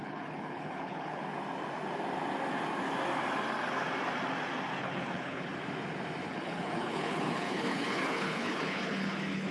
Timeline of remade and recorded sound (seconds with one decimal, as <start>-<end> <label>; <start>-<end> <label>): 0.0-1.2 remade; 1.2-4.8 recorded; 4.8-5.5 remade; 5.5-6.3 recorded; 6.3-9.5 remade